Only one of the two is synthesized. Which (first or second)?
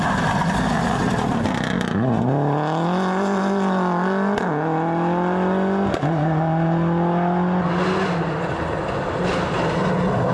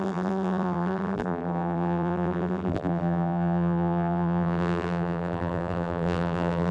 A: second